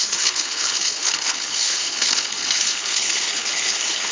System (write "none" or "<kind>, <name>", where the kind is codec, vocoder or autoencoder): codec, HILCodec